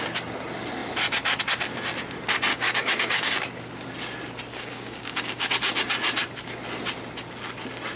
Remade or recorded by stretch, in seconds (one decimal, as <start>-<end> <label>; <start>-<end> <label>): 0.0-2.5 recorded; 2.5-3.3 remade; 3.3-4.5 recorded; 4.5-5.5 remade; 5.5-8.0 recorded